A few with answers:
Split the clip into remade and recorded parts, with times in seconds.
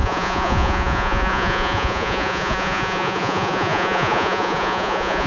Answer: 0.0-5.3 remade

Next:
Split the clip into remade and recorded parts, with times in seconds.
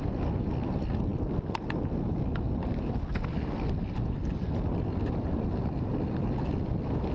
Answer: 0.0-7.1 recorded